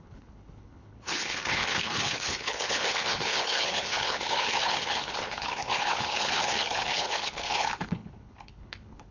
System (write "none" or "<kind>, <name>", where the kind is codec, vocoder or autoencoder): codec, HILCodec